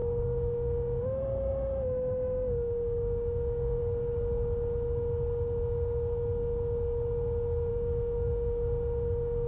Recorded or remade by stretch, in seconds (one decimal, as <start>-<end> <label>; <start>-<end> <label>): 0.0-3.8 remade; 3.8-7.7 recorded; 7.7-9.5 remade